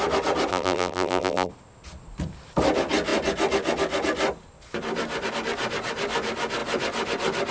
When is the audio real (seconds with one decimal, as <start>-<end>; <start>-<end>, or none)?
0.0-0.5; 1.5-7.5